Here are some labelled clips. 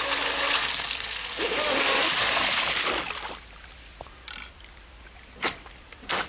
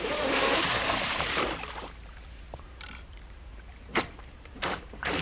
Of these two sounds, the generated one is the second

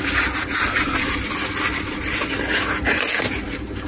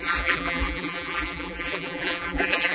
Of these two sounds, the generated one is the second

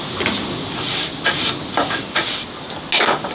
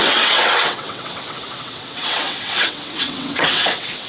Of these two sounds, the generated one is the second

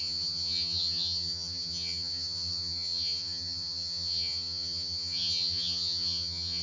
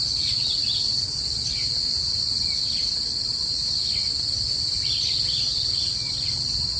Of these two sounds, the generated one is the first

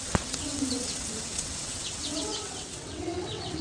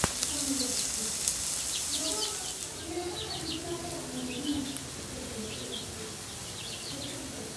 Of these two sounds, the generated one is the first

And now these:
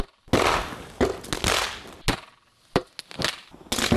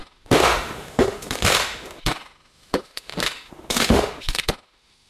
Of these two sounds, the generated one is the second